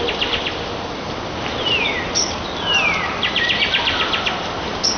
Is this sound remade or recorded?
recorded